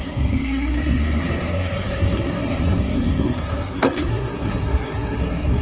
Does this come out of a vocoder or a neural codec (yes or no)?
yes